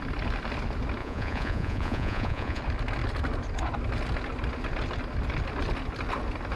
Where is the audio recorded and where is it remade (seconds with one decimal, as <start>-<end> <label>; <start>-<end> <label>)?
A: 0.0-1.0 recorded; 1.0-2.6 remade; 2.6-6.6 recorded